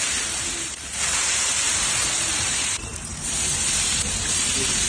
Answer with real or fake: fake